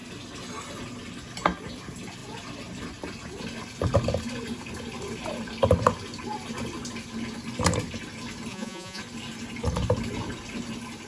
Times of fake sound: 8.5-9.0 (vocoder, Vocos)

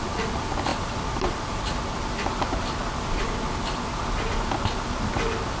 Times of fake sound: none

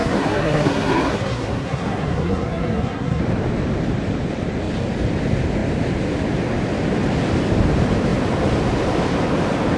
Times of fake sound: 0.0-3.2 (codec, SNAC)

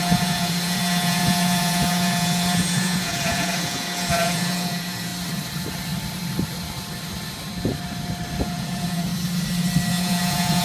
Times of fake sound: 0.0-5.1 (vocoder, Vocos); 8.4-9.1; 9.9-10.6

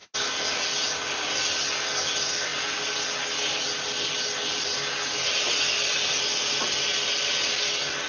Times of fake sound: none

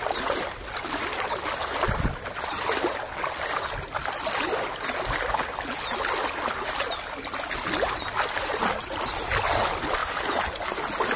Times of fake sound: none

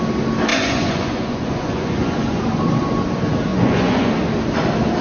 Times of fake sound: 0.5-2.4 (vocoder, Vocos); 3.5-4.1

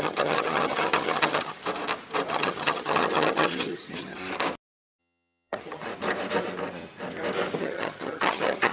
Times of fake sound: 0.0-1.6 (vocoder, HiFi-GAN); 2.3-4.2; 5.0-5.9; 7.6-8.7